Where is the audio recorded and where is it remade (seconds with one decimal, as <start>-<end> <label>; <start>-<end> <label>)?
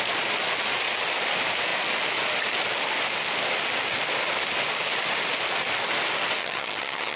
0.0-6.4 recorded; 6.4-7.2 remade